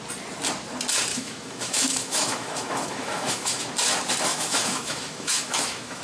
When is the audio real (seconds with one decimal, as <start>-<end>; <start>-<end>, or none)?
0.0-1.1; 3.6-4.3